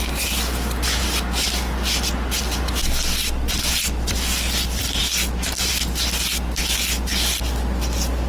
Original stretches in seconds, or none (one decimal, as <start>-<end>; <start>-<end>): 0.0-8.3